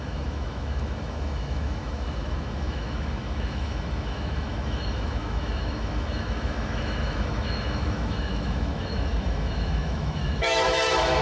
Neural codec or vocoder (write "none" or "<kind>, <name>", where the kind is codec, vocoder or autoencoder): autoencoder, DAC-VAE